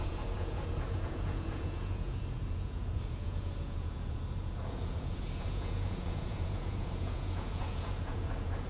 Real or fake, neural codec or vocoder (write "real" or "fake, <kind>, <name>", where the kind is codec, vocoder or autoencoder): fake, vocoder, Vocos